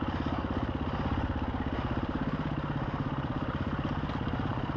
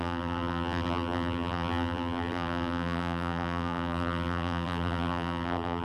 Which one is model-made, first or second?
second